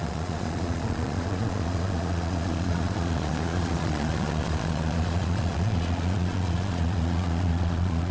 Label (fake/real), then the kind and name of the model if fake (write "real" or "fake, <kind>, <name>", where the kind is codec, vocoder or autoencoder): fake, vocoder, Vocos